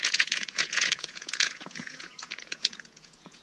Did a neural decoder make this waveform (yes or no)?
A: yes